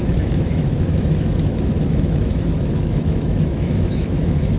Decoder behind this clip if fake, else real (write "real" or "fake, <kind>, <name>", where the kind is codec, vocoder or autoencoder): fake, autoencoder, DAC-VAE